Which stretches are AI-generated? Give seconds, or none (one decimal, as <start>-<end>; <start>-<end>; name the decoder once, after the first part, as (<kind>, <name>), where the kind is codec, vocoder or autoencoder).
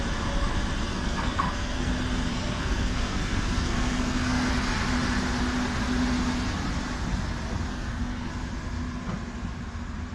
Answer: 0.9-1.9 (codec, SNAC); 2.3-4.5; 7.7-8.3